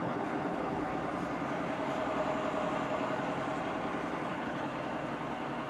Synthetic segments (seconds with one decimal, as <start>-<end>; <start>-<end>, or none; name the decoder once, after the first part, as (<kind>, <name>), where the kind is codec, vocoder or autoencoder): 0.0-0.9 (codec, HILCodec); 4.3-4.7